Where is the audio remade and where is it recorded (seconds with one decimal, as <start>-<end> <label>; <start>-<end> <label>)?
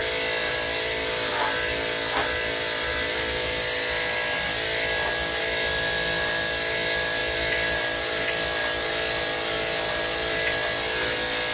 0.0-11.5 recorded